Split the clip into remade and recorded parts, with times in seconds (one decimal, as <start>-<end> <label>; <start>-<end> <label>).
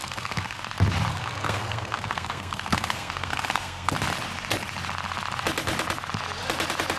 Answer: 0.0-0.6 remade; 0.6-1.1 recorded; 1.1-3.9 remade; 3.9-7.0 recorded